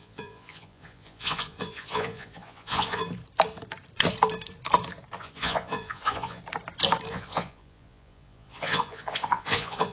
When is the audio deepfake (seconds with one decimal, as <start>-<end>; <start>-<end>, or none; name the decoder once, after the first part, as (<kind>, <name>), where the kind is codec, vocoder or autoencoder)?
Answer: 0.0-3.0 (vocoder, Vocos); 5.2-6.4; 7.1-9.9